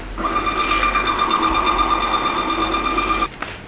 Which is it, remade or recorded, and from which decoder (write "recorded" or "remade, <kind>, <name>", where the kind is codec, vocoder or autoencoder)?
recorded